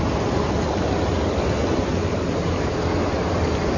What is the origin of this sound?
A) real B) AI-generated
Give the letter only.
A